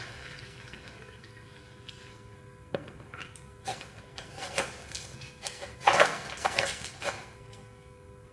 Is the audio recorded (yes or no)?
no